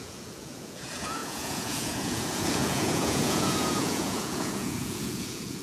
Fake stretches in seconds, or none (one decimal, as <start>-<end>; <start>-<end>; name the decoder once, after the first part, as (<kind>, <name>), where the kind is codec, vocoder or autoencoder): 0.0-5.6 (vocoder, Vocos)